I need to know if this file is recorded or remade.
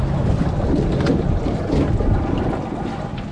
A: recorded